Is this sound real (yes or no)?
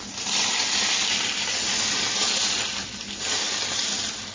yes